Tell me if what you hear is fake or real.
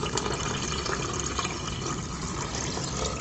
real